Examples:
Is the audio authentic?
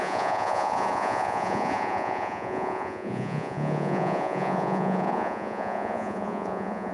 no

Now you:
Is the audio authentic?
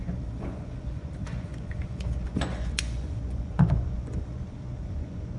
no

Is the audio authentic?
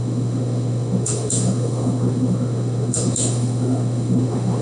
no